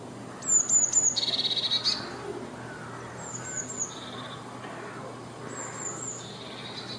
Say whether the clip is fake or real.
real